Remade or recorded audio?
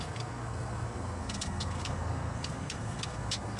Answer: remade